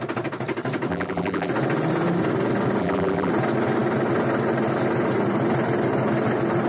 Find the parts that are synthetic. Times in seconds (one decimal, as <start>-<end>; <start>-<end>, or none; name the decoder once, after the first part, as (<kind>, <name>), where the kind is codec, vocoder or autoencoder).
0.9-1.5 (vocoder, BigVGAN v2); 2.8-3.3